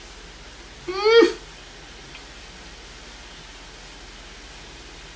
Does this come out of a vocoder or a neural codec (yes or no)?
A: no